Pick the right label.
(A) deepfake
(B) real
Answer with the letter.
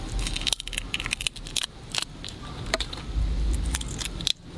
B